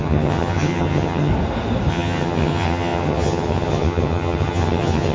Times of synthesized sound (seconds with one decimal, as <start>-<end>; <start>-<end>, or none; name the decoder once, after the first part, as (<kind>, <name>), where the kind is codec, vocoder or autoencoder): 0.0-1.3 (vocoder, HiFi-GAN); 1.9-5.1